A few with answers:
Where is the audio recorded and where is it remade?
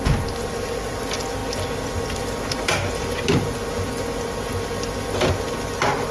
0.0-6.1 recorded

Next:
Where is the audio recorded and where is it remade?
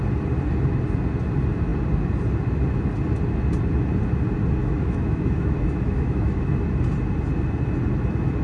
0.0-4.6 recorded; 4.6-6.4 remade; 6.4-8.4 recorded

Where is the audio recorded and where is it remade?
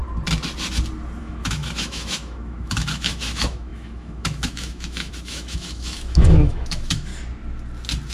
0.0-1.2 recorded; 1.2-7.1 remade; 7.1-8.1 recorded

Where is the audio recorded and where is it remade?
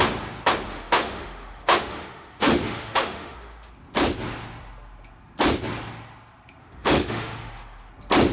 0.0-0.7 recorded; 0.7-3.7 remade; 3.7-6.6 recorded; 6.6-7.9 remade; 7.9-8.3 recorded